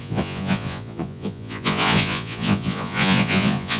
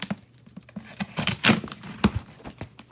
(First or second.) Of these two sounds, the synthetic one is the first